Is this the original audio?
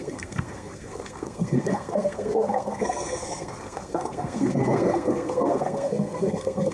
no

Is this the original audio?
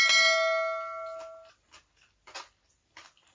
yes